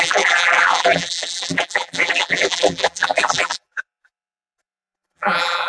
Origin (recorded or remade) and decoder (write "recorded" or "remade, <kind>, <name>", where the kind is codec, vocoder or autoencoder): remade, vocoder, BigVGAN v2